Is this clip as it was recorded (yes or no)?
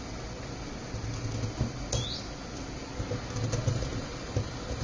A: yes